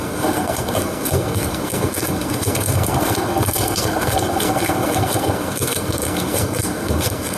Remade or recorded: remade